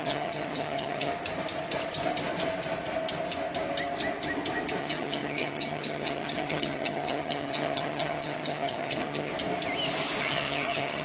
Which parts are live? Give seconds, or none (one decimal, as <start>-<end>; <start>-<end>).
1.1-4.8; 9.3-10.2